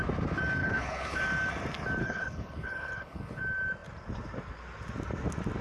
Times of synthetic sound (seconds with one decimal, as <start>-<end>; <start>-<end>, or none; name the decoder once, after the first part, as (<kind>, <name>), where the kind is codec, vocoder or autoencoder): 0.6-1.2 (codec, HILCodec); 2.0-3.4